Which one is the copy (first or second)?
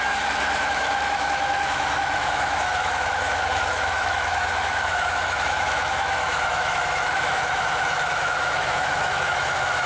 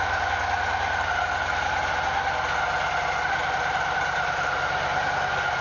first